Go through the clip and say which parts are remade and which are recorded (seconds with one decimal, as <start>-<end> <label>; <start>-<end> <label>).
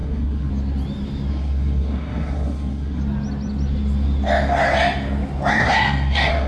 0.0-0.5 remade; 0.5-1.3 recorded; 1.3-3.0 remade; 3.0-5.5 recorded; 5.5-6.5 remade